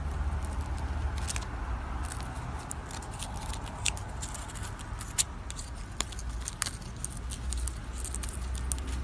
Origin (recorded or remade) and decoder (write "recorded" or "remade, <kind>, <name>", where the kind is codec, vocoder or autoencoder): recorded